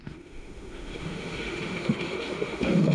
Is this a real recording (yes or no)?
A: no